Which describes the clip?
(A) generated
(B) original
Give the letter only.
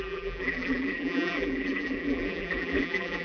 A